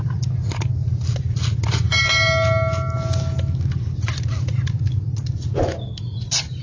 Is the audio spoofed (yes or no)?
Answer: no